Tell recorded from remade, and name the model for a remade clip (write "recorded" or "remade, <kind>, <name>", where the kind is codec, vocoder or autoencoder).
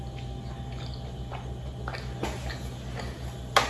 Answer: recorded